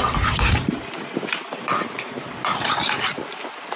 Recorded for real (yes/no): yes